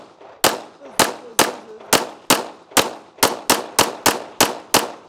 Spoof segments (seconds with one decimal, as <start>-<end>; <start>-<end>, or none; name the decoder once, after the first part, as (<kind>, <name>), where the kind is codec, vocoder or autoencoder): none